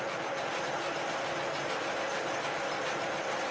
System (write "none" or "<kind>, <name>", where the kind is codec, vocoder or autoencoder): none